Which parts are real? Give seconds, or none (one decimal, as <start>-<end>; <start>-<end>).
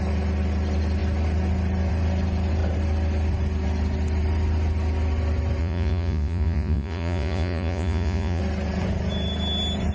0.0-5.6; 8.4-9.9